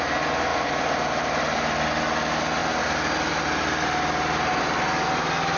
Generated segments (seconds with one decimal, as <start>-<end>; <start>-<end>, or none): 0.5-1.2